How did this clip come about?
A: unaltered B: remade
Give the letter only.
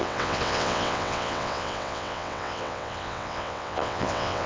B